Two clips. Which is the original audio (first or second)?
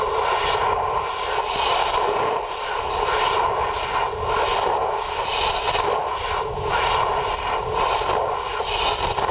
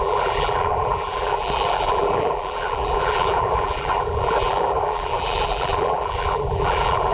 first